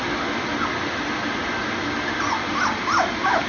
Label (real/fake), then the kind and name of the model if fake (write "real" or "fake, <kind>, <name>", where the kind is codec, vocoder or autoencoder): real